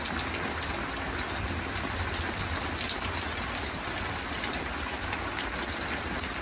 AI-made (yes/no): no